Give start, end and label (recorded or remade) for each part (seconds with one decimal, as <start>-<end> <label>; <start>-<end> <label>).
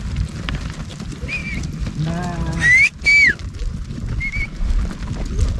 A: 0.0-5.6 recorded